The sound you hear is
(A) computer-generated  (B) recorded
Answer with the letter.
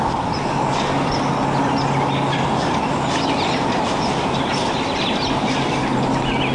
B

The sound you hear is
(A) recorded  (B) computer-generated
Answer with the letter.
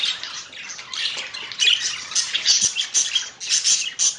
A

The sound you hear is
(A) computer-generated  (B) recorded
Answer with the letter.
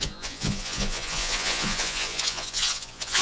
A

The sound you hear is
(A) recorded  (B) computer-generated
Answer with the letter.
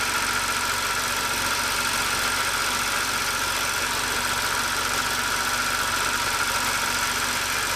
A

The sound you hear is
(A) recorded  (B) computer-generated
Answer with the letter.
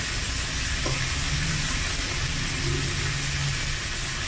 A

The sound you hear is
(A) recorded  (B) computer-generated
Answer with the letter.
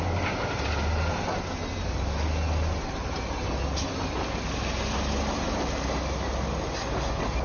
A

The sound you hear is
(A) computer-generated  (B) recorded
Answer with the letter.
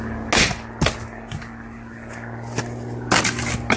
B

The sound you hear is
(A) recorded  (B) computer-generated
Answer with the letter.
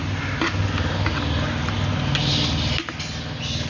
A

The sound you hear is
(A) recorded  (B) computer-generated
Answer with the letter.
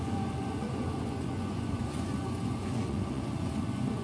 B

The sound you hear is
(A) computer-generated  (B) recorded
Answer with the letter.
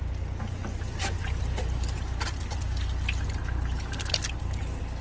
B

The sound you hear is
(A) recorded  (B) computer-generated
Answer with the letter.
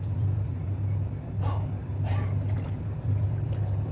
B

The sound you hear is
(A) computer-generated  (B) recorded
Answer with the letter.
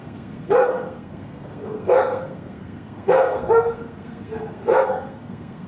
A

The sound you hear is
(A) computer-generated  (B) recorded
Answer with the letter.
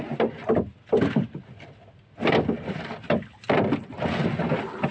B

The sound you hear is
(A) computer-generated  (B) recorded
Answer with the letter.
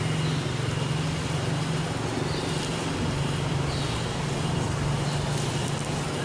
B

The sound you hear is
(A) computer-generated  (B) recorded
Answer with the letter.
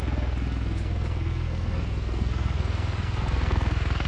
A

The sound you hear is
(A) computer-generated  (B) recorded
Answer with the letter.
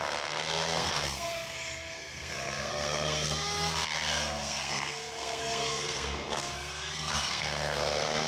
A